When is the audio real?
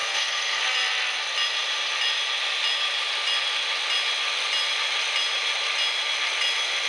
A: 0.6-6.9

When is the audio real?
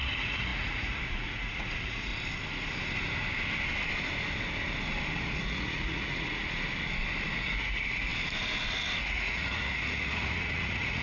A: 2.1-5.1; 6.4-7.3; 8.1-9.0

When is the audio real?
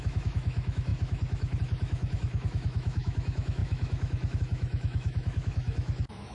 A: none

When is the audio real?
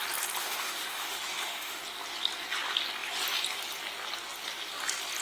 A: 0.0-0.4; 1.8-5.2